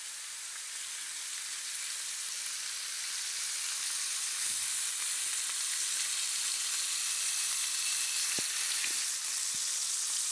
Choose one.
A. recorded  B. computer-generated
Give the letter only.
A